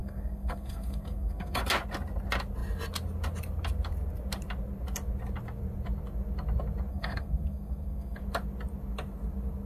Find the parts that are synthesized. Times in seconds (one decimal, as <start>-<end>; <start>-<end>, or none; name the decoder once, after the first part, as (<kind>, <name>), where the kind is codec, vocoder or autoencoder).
0.0-1.6 (codec, SNAC); 6.9-8.2